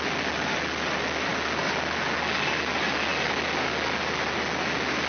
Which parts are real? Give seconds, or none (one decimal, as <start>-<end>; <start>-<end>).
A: 0.0-5.1